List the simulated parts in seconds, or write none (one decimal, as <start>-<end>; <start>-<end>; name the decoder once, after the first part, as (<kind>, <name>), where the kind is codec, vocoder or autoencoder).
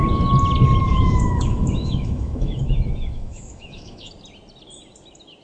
0.9-4.1 (autoencoder, DAC-VAE)